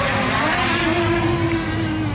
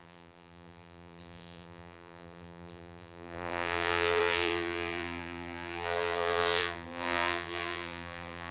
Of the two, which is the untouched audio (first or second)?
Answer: first